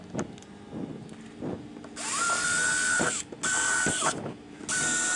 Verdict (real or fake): real